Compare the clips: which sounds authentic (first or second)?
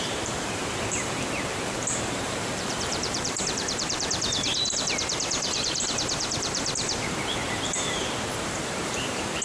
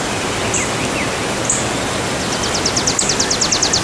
second